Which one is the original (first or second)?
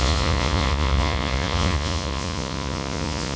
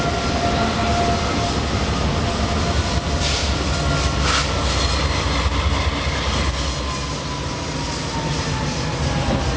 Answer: second